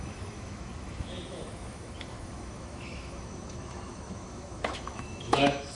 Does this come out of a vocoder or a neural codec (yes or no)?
yes